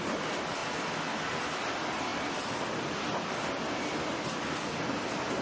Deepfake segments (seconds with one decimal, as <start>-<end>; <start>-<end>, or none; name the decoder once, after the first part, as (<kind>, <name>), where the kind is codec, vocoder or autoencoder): none